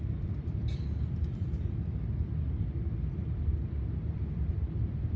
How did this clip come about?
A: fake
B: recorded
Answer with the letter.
B